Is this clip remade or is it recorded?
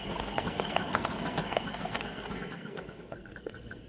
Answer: remade